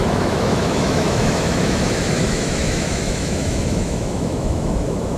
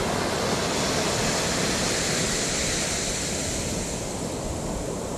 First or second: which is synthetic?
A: first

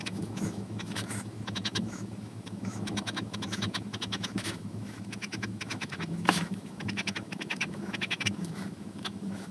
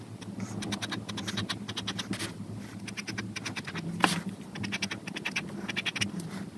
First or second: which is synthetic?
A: first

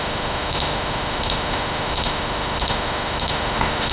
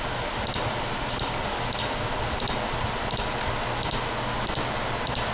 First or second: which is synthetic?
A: first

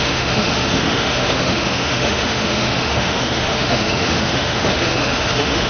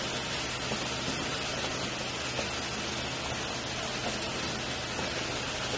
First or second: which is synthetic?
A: first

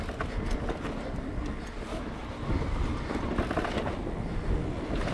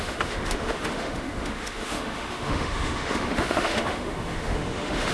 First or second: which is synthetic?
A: second